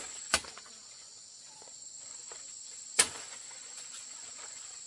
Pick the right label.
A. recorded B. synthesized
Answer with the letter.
B